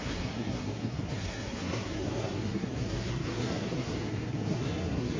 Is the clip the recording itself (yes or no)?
no